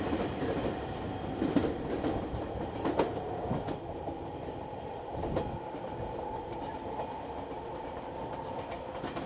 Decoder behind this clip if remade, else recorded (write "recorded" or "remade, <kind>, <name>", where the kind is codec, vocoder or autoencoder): recorded